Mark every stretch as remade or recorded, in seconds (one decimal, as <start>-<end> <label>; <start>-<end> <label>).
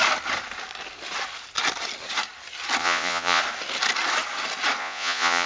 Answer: 0.0-2.8 recorded; 2.8-3.4 remade; 3.4-4.8 recorded; 4.8-5.5 remade